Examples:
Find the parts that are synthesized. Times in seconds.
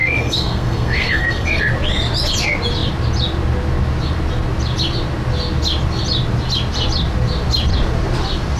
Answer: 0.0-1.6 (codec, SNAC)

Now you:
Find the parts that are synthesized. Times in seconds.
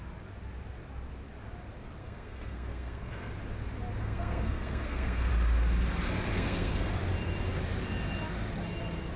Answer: 2.0-3.3 (codec, SNAC); 4.0-5.3; 6.3-7.0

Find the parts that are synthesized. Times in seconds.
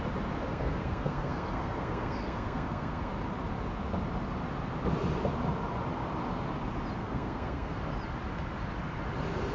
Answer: 0.5-3.1 (codec, SNAC); 7.0-7.8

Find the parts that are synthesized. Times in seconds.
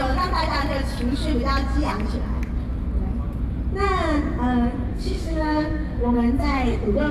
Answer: 4.9-7.1 (codec, SNAC)